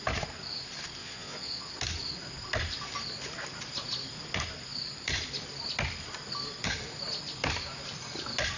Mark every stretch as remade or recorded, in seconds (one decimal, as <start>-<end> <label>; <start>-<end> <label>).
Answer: 0.0-1.0 recorded; 1.0-1.7 remade; 1.7-8.6 recorded